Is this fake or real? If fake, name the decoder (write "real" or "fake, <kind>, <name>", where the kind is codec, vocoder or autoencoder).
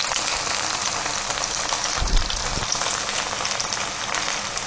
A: real